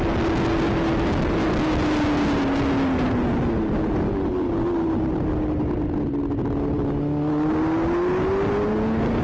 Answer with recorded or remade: recorded